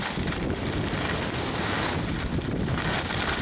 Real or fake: real